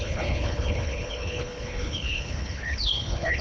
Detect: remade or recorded remade